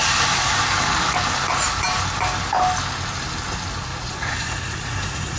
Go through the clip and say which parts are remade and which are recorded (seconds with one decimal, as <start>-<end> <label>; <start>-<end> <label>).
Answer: 0.0-3.9 recorded; 3.9-5.4 remade

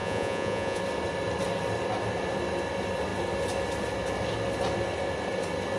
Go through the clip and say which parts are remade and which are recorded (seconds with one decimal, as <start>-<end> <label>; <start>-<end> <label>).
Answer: 0.0-0.8 remade; 0.8-5.8 recorded

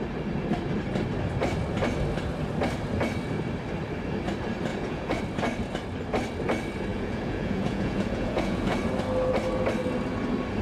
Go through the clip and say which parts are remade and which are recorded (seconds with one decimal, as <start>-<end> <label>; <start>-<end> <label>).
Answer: 0.0-4.7 recorded; 4.7-5.2 remade; 5.2-6.9 recorded; 6.9-8.8 remade; 8.8-10.6 recorded